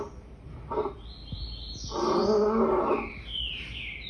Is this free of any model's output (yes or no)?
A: yes